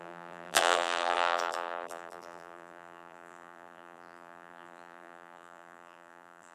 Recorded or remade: remade